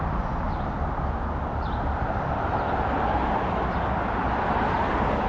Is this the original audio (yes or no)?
yes